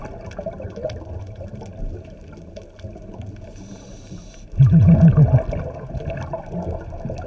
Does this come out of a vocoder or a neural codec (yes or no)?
no